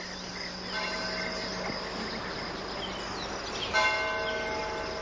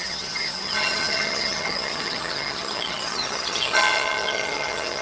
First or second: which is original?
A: first